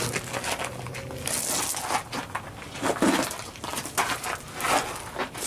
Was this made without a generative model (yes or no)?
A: yes